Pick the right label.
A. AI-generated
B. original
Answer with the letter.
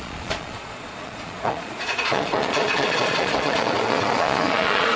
A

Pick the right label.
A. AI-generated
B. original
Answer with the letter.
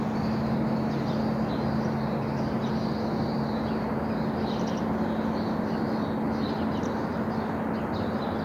B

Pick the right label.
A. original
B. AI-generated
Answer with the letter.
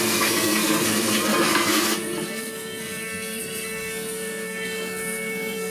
B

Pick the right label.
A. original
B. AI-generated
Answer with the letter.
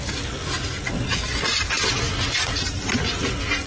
A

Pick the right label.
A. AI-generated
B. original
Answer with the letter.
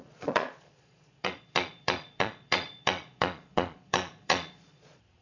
A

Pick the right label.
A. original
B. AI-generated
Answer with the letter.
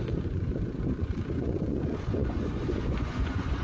B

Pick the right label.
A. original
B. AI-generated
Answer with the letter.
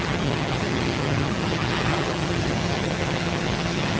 B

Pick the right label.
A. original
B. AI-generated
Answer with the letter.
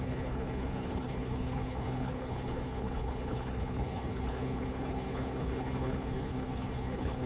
B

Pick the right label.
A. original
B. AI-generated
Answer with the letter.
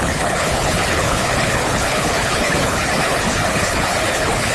B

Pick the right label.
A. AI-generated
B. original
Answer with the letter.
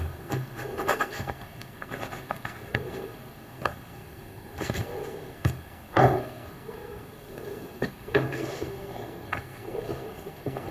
A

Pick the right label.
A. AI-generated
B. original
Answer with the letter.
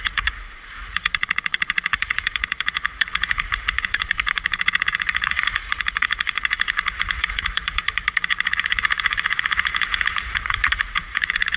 A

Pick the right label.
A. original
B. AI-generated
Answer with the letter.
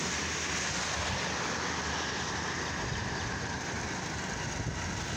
A